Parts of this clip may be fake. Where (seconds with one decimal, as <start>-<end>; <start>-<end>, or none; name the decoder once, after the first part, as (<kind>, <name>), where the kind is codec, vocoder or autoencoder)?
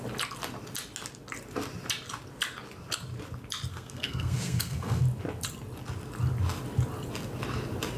3.7-5.0 (codec, SNAC)